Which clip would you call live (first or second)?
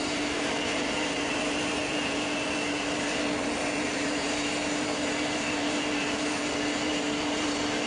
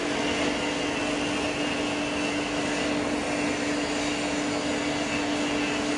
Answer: second